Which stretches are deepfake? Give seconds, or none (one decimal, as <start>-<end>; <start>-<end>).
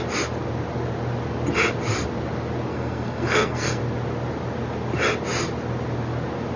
2.7-3.8